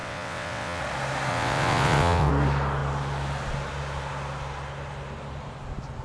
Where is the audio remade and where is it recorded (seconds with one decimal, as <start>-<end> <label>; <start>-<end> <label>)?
0.0-0.8 remade; 0.8-1.3 recorded; 1.3-2.3 remade; 2.3-6.0 recorded